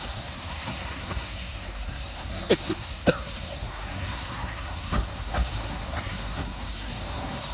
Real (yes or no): no